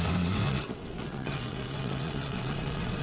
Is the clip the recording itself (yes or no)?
no